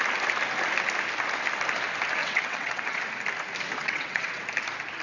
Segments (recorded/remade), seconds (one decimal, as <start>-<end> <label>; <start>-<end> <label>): 0.0-2.2 recorded; 2.2-3.0 remade; 3.0-3.8 recorded; 3.8-4.4 remade; 4.4-5.0 recorded